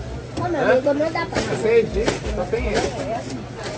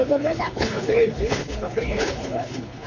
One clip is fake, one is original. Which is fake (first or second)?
second